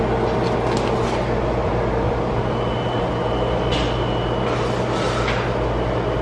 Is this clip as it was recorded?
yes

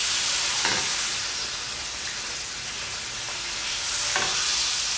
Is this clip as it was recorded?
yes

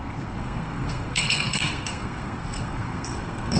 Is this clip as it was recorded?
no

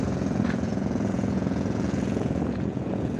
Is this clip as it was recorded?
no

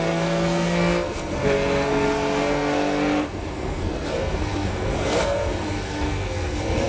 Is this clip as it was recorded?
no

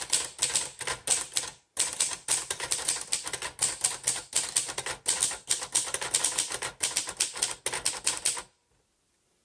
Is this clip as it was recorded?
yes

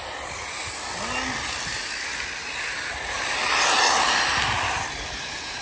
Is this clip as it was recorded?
yes